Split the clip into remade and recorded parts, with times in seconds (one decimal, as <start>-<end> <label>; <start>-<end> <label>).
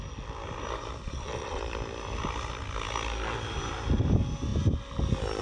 0.0-1.0 recorded; 1.0-1.6 remade; 1.6-5.4 recorded